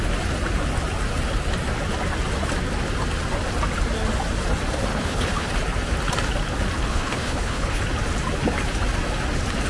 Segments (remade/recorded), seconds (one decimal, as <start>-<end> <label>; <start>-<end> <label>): 0.0-4.9 recorded; 4.9-5.5 remade; 5.5-6.9 recorded; 6.9-7.8 remade; 7.8-9.7 recorded